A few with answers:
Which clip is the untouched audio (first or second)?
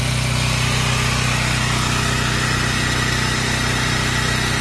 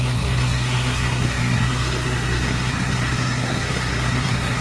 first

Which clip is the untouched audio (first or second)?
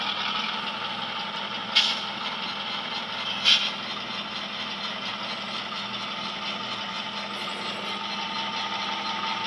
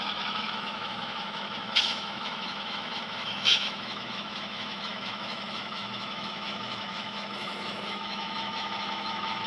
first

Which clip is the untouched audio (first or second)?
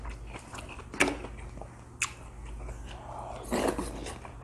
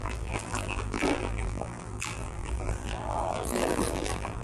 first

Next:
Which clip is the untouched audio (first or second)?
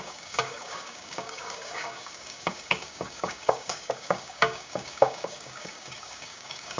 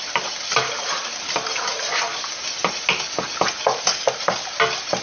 second